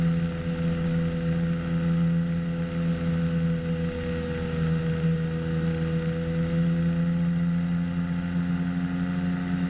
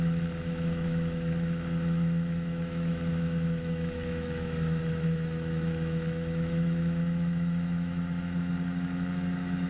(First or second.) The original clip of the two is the first